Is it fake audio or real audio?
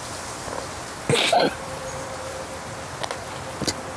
real